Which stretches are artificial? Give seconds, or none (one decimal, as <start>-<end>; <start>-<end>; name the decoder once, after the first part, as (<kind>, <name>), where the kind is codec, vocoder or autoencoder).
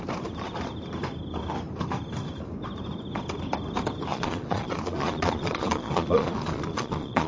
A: 4.1-7.3 (vocoder, Vocos)